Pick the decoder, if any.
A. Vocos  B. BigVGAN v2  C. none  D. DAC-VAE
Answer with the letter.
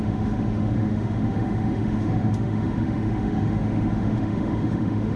D